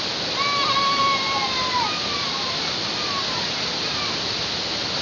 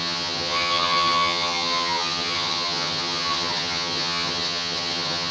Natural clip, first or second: first